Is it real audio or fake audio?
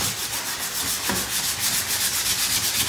real